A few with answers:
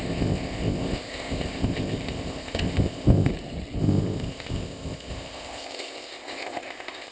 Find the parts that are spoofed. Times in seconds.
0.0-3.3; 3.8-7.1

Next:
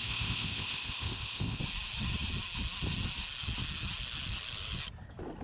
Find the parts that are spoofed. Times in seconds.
0.0-1.6